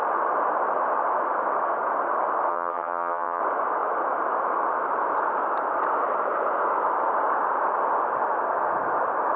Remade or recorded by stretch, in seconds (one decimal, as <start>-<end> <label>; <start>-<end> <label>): 0.0-2.5 recorded; 2.5-3.4 remade; 3.4-9.4 recorded